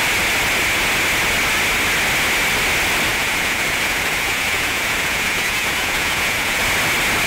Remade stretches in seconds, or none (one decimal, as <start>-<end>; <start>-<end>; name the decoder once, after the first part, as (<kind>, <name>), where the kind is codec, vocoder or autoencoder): 3.1-6.6 (vocoder, Vocos)